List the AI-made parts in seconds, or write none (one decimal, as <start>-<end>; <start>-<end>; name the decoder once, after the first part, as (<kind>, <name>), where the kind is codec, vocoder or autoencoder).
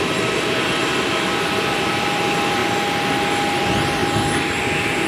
0.0-0.8 (vocoder, BigVGAN v2); 1.6-2.6; 3.6-4.0